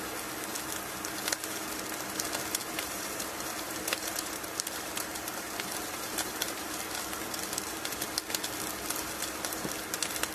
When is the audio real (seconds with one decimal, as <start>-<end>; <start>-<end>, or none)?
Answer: 0.0-2.6; 6.7-10.3